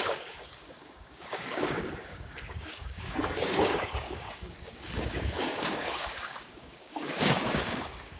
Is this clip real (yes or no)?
no